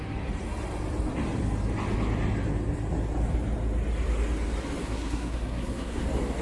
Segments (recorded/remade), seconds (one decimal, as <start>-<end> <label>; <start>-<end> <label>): 0.0-4.8 recorded; 4.8-6.0 remade; 6.0-6.4 recorded